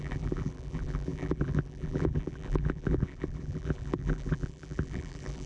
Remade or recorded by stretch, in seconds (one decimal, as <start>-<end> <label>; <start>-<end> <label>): 0.0-5.5 remade